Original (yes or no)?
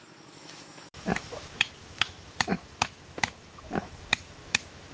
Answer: no